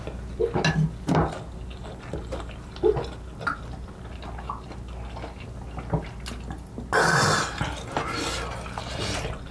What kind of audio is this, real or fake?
real